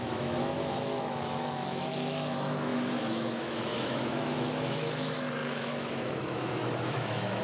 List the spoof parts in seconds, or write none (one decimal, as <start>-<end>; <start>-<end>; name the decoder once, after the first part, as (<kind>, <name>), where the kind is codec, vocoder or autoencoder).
0.0-7.4 (autoencoder, DAC-VAE)